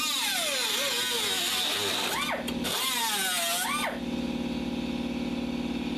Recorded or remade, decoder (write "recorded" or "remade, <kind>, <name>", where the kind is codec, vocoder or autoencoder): recorded